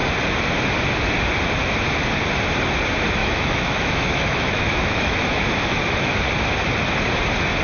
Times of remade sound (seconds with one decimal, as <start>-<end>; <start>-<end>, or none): 3.2-6.2